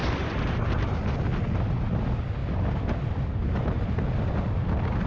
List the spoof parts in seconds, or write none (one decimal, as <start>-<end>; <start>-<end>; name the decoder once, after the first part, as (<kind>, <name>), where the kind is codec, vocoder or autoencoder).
0.0-1.3 (vocoder, BigVGAN v2)